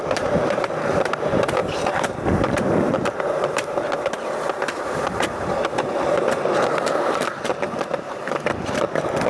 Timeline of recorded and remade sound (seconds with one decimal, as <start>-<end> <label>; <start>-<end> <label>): 0.0-9.3 remade